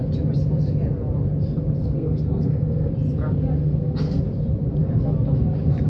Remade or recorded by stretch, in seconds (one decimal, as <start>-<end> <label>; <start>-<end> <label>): 0.0-1.8 recorded; 1.8-2.9 remade; 2.9-3.6 recorded; 3.6-4.2 remade; 4.2-5.9 recorded